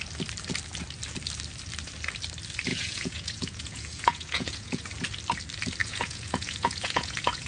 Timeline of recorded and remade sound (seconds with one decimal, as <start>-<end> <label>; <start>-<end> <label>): 0.0-2.7 recorded; 2.7-4.9 remade; 4.9-5.8 recorded; 5.8-7.5 remade